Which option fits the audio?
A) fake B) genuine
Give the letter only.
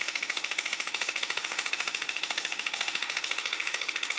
A